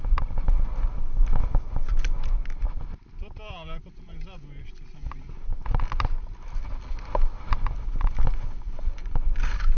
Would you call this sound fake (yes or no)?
no